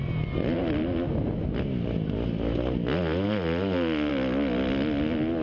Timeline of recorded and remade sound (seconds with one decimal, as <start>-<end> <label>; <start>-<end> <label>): 0.0-5.4 recorded